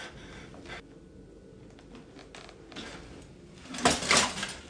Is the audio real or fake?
real